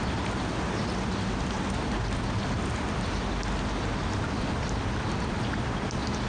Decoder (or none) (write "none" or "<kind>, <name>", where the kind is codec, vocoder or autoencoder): none